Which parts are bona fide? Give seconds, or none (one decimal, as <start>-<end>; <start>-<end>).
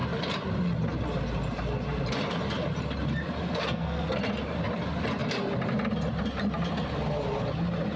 0.0-3.6; 4.2-8.0